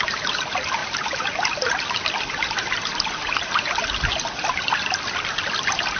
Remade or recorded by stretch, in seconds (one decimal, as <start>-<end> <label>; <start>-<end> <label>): 0.0-6.0 recorded